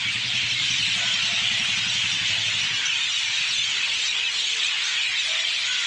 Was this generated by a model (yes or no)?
yes